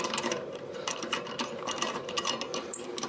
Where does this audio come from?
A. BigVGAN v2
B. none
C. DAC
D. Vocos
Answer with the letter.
A